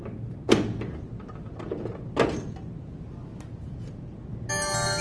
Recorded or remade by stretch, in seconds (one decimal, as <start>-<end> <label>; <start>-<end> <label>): 0.0-5.0 recorded